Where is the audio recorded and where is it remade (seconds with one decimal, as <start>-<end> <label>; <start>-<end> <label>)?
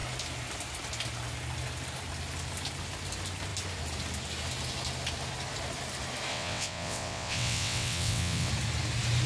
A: 0.0-6.3 recorded; 6.3-8.5 remade; 8.5-9.3 recorded